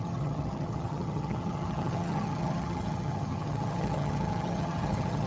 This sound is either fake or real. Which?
fake